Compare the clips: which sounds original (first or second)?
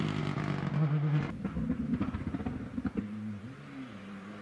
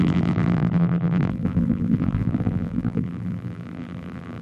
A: first